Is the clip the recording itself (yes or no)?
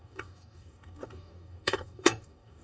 no